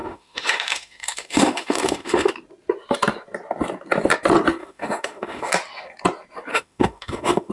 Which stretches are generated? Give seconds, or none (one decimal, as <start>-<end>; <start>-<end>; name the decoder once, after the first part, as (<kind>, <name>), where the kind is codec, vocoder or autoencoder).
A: 0.0-2.3 (autoencoder, DAC-VAE); 4.6-5.5; 6.5-7.5